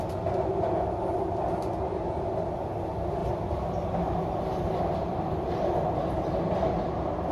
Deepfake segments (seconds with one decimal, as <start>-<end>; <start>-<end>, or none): 3.2-7.3